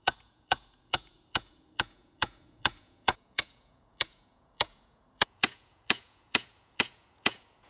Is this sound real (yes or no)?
no